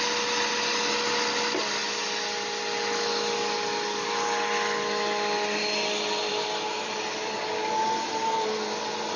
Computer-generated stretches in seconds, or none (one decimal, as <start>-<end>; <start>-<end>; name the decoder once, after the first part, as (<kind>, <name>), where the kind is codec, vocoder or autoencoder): none